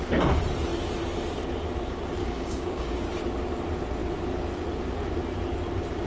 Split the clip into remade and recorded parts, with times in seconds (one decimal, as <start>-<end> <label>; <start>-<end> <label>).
0.0-2.2 recorded; 2.2-3.1 remade; 3.1-6.1 recorded